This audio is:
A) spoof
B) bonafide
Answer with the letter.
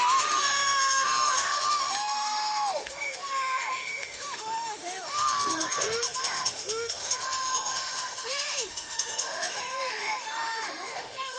A